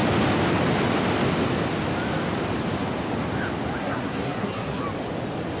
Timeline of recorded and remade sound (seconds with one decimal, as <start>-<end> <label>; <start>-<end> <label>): 0.0-3.8 recorded; 3.8-4.8 remade; 4.8-5.6 recorded